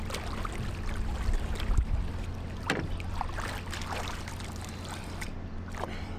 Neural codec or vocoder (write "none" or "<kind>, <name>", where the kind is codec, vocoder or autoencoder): none